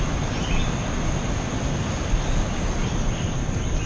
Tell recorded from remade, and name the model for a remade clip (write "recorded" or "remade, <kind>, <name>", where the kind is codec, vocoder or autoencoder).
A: recorded